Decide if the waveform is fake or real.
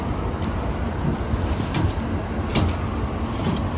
real